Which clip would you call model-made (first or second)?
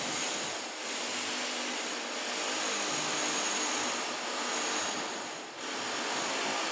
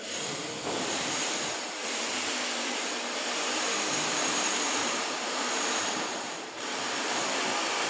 second